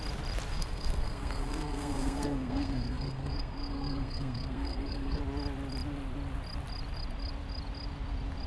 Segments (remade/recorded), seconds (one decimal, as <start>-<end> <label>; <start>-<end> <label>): 0.0-0.5 recorded; 0.5-5.2 remade; 5.2-8.5 recorded